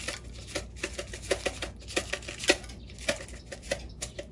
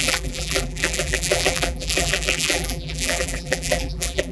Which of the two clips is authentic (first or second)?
first